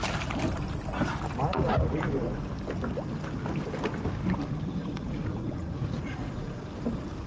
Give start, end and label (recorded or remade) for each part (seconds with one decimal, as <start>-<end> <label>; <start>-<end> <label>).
0.0-1.5 recorded; 1.5-2.5 remade; 2.5-4.8 recorded; 4.8-6.6 remade; 6.6-7.3 recorded